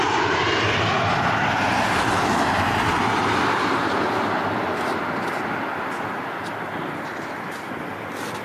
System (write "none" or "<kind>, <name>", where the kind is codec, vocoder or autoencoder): none